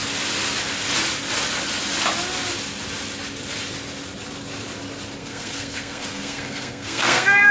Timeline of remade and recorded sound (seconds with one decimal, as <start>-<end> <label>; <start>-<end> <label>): 0.0-5.2 recorded; 5.2-7.5 remade